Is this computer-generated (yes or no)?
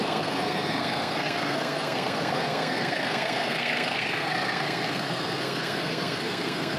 yes